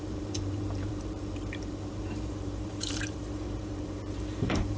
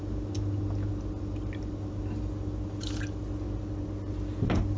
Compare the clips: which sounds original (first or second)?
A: second